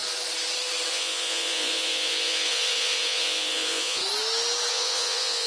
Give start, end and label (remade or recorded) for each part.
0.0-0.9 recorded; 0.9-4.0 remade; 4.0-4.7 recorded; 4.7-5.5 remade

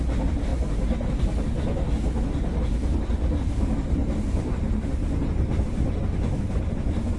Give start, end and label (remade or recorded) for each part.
0.0-7.2 recorded

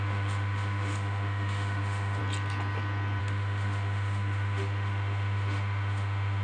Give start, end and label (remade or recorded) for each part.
0.0-2.2 remade; 2.2-3.2 recorded; 3.2-6.4 remade

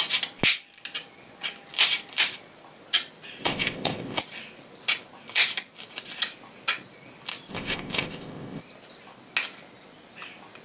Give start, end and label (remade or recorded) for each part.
0.0-3.4 recorded; 3.4-4.2 remade; 4.2-7.5 recorded; 7.5-8.6 remade; 8.6-10.6 recorded

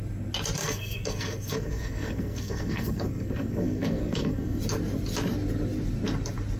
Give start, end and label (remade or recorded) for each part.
0.0-0.6 recorded; 0.6-4.6 remade; 4.6-6.6 recorded

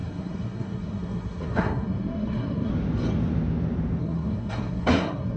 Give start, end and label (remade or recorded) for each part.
0.0-2.7 remade; 2.7-4.0 recorded; 4.0-5.4 remade